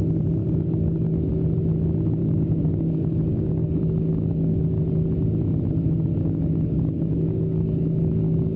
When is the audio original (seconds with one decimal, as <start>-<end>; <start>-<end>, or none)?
0.0-0.4; 1.3-2.2; 4.8-6.1